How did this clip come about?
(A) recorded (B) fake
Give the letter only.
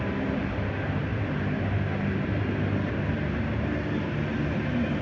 A